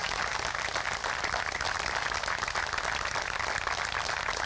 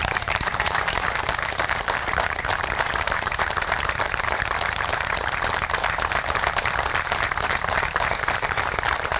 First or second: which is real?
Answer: first